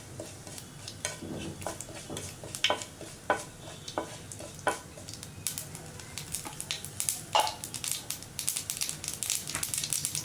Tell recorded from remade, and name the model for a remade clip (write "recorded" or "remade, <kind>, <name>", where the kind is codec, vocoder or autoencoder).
recorded